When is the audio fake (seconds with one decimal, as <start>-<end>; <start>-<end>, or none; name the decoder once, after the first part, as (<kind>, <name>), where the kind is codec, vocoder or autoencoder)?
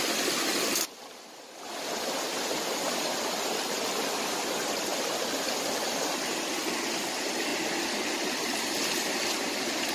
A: none